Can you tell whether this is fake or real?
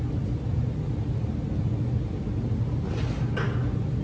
real